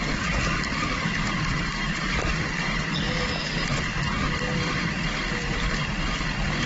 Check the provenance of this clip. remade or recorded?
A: recorded